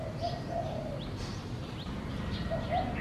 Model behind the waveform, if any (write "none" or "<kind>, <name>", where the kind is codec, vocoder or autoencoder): none